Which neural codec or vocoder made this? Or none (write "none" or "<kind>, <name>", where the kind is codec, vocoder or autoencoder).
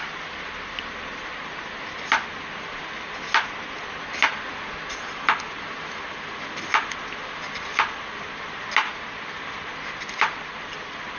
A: none